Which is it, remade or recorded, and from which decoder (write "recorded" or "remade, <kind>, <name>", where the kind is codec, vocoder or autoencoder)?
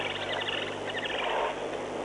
recorded